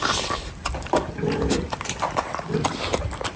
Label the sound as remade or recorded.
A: recorded